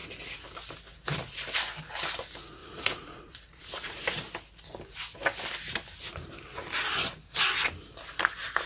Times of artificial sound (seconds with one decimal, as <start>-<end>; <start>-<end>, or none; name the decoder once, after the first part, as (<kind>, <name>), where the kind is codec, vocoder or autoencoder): 2.6-4.0 (vocoder, Vocos)